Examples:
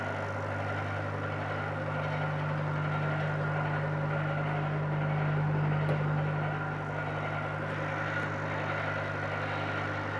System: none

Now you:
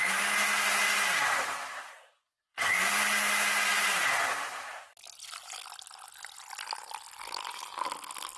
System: none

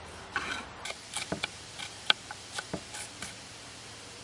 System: vocoder, BigVGAN v2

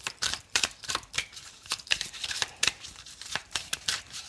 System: vocoder, BigVGAN v2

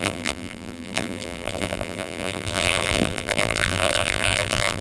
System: vocoder, BigVGAN v2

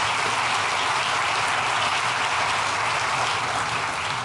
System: none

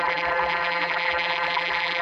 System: vocoder, BigVGAN v2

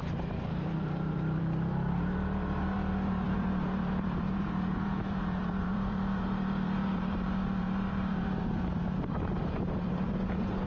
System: vocoder, BigVGAN v2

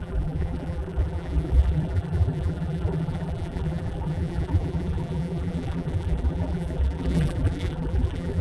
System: vocoder, BigVGAN v2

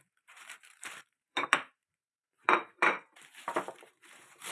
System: vocoder, BigVGAN v2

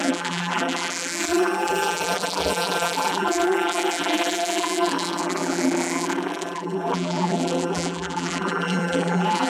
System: vocoder, BigVGAN v2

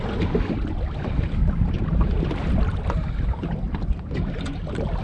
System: none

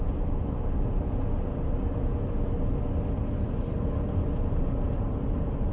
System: none